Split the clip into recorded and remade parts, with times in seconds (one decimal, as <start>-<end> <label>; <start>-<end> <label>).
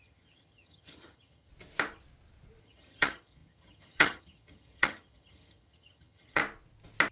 0.0-1.5 remade; 1.5-2.6 recorded; 2.6-6.4 remade; 6.4-7.1 recorded